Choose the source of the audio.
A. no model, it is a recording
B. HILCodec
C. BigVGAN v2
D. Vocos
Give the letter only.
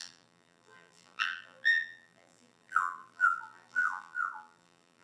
C